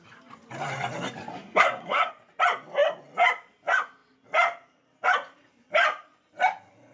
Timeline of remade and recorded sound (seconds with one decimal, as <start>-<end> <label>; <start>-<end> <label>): 0.0-1.3 recorded; 1.3-2.1 remade; 2.1-6.9 recorded

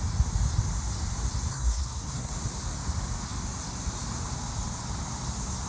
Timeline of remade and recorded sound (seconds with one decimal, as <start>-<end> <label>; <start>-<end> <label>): 0.0-1.5 recorded; 1.5-2.3 remade; 2.3-5.7 recorded

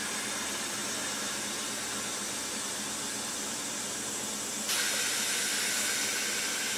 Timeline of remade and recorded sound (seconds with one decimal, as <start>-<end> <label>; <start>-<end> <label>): 0.0-6.8 recorded

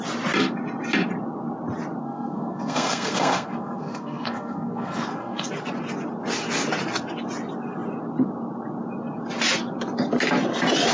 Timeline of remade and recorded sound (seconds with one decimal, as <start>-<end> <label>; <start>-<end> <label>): 0.0-2.0 recorded; 2.0-5.5 remade; 5.5-10.9 recorded

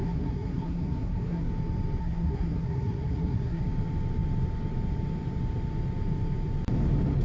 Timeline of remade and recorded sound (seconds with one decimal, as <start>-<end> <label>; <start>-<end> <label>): 0.0-1.5 remade; 1.5-2.0 recorded; 2.0-3.6 remade; 3.6-7.2 recorded

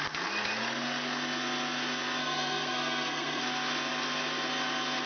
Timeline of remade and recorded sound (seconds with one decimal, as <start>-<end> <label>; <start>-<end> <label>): 0.0-2.2 recorded; 2.2-3.4 remade; 3.4-5.1 recorded